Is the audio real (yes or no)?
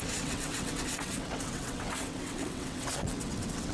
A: no